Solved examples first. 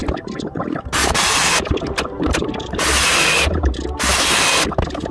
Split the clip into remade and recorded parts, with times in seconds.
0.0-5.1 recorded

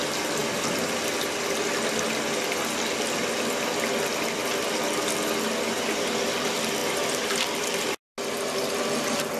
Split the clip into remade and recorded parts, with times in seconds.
0.0-9.4 recorded

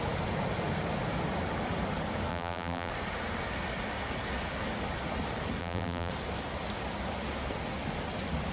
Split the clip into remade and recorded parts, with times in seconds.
0.0-2.3 recorded; 2.3-2.9 remade; 2.9-5.6 recorded; 5.6-6.1 remade; 6.1-8.5 recorded

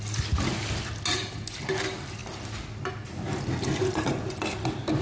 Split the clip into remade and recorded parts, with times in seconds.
0.0-2.2 recorded; 2.2-2.9 remade; 2.9-5.0 recorded

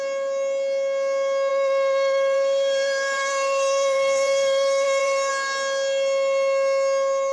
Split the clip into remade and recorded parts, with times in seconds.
0.0-1.5 recorded; 1.5-5.3 remade; 5.3-7.3 recorded

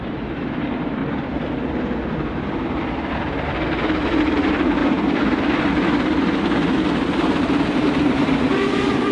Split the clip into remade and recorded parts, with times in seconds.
0.0-1.0 remade; 1.0-4.2 recorded; 4.2-4.8 remade; 4.8-7.4 recorded; 7.4-9.1 remade